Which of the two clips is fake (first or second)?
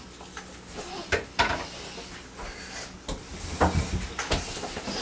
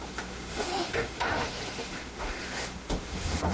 second